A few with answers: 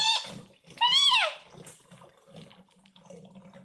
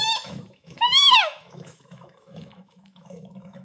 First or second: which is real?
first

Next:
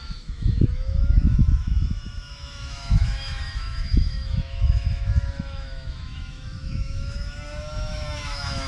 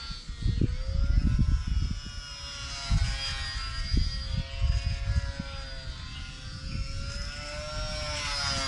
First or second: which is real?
second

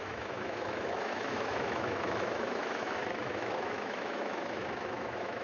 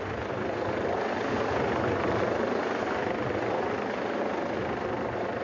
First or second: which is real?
second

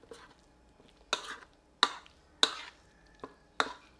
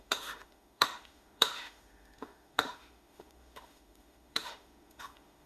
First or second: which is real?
first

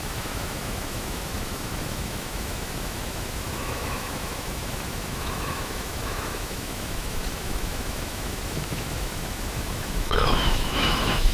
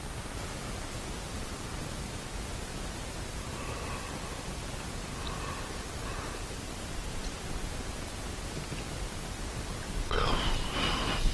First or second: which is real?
second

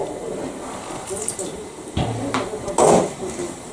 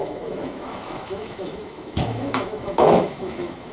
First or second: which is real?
first